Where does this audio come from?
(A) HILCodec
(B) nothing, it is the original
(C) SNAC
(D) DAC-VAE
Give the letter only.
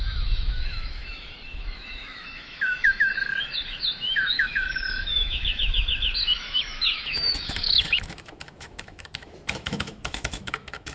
D